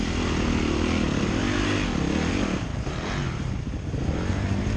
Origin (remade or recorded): recorded